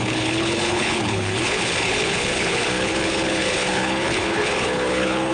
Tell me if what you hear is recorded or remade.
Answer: remade